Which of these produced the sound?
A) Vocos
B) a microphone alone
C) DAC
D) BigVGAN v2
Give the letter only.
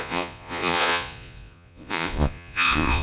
A